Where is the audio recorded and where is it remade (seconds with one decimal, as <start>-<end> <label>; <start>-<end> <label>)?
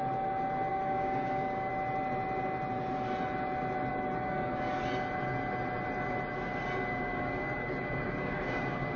0.0-0.7 recorded; 0.7-1.7 remade; 1.7-3.9 recorded; 3.9-4.8 remade; 4.8-6.9 recorded; 6.9-9.0 remade